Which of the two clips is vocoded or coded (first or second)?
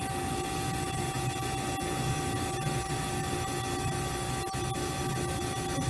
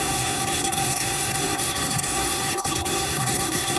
second